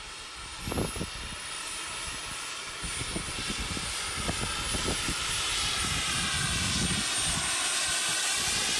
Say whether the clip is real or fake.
real